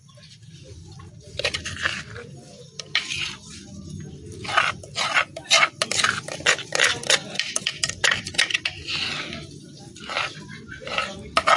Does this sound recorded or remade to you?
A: recorded